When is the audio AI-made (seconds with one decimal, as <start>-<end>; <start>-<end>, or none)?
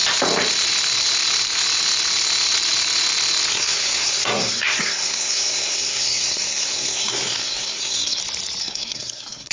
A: 3.5-8.2; 8.6-9.5